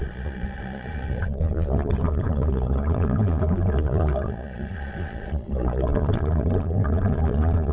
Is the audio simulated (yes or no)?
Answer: yes